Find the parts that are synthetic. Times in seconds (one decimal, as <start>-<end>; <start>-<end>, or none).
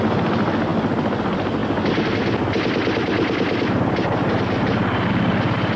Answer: none